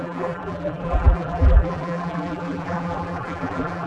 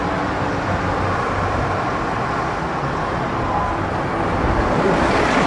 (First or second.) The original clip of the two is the second